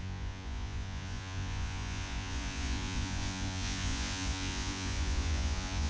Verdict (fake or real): fake